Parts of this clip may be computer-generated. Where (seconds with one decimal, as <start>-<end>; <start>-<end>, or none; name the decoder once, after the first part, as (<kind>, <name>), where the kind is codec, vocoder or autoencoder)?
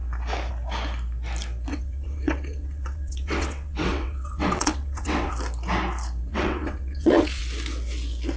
1.7-5.3 (vocoder, WaveNeXt); 6.3-7.4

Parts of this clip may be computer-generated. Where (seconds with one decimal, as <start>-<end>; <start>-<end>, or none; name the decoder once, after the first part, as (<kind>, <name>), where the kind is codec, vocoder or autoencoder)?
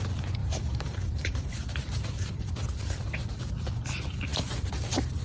0.4-3.5 (vocoder, BigVGAN v2)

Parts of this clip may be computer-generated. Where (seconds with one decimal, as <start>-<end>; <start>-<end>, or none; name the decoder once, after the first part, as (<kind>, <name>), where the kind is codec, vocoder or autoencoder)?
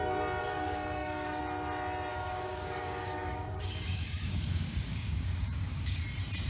0.4-1.4 (codec, DAC); 2.1-6.0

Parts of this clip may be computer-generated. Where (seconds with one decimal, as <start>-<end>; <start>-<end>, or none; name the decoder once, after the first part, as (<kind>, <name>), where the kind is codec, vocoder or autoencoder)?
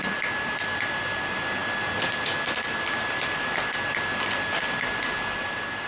none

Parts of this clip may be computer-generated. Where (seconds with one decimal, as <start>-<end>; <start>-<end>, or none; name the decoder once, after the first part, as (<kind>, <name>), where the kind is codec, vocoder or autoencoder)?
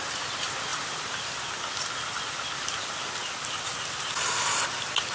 none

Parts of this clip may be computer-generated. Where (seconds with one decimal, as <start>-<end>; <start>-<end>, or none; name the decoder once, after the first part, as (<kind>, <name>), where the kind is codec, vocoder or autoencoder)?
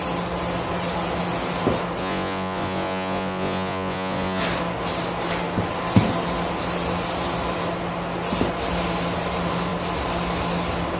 2.0-4.4 (vocoder, Vocos)